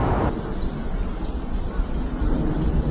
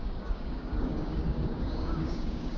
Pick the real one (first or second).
first